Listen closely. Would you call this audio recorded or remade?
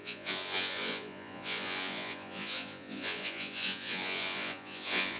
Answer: remade